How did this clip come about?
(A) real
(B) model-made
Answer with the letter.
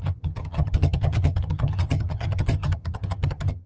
B